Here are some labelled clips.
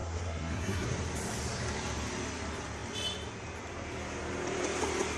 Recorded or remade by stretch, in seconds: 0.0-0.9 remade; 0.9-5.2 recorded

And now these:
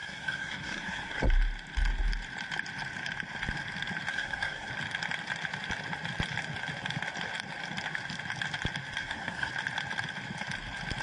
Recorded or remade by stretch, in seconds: 0.0-1.2 remade; 1.2-4.1 recorded; 4.1-4.7 remade; 4.7-9.0 recorded; 9.0-9.5 remade; 9.5-11.0 recorded

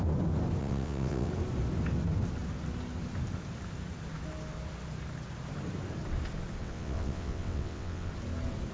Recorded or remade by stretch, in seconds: 0.0-0.6 recorded; 0.6-1.3 remade; 1.3-6.6 recorded; 6.6-8.1 remade; 8.1-8.7 recorded

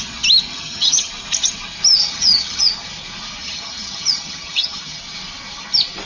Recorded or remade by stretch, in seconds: 0.0-0.5 recorded; 0.5-1.1 remade; 1.1-2.0 recorded; 2.0-2.6 remade; 2.6-3.4 recorded; 3.4-5.0 remade; 5.0-6.1 recorded

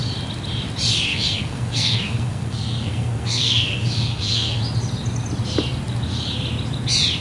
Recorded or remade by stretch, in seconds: 0.0-1.1 recorded; 1.1-4.6 remade; 4.6-7.2 recorded